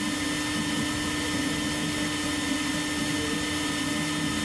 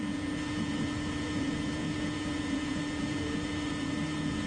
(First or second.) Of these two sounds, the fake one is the second